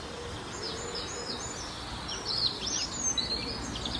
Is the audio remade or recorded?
recorded